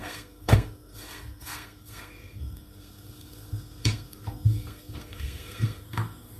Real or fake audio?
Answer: fake